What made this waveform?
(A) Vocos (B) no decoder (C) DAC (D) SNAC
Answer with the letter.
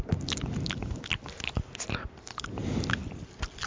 B